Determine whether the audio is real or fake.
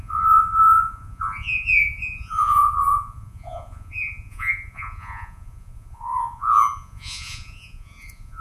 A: fake